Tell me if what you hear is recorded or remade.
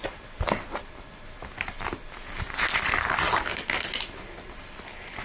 recorded